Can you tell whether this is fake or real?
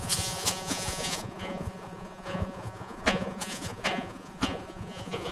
fake